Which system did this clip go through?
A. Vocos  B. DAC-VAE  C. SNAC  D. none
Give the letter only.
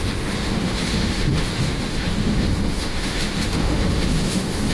B